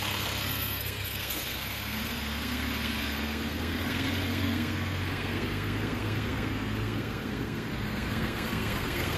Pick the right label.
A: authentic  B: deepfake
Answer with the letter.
B